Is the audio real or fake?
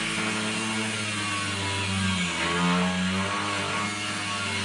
real